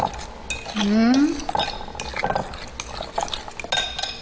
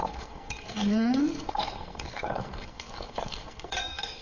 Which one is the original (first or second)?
first